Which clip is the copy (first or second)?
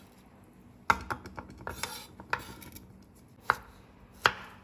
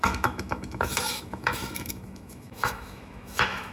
second